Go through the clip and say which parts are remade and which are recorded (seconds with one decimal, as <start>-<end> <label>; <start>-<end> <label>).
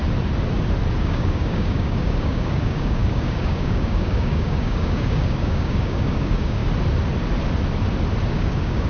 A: 0.0-1.0 recorded; 1.0-6.6 remade; 6.6-8.3 recorded; 8.3-8.9 remade